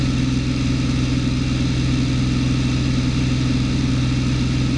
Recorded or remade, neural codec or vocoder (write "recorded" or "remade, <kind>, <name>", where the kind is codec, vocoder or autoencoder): recorded